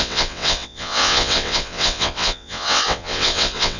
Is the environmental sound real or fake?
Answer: fake